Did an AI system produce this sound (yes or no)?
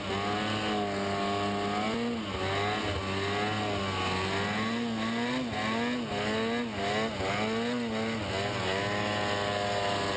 no